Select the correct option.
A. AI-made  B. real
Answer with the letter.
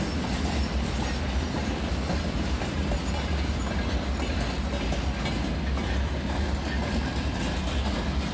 B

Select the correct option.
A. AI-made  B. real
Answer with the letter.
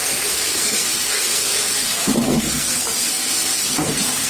A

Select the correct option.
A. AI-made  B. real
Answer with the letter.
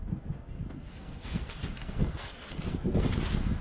A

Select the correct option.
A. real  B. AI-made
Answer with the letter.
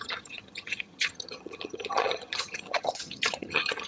B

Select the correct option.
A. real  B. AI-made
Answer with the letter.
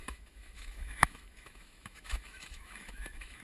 B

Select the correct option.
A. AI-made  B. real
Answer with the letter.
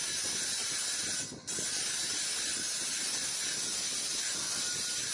B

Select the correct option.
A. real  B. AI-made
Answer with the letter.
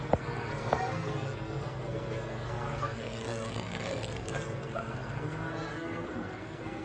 B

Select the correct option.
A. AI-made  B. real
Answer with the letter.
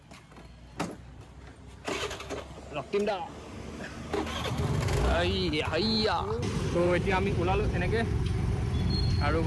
B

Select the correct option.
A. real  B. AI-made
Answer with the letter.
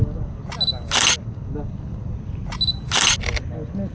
A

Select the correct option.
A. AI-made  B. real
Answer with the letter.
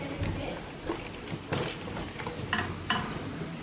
B